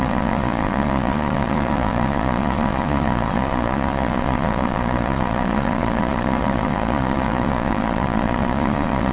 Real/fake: fake